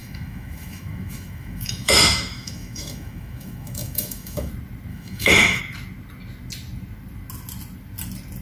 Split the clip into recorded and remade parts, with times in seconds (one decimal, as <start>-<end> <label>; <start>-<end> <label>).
0.0-4.5 remade; 4.5-4.9 recorded; 4.9-5.6 remade; 5.6-8.4 recorded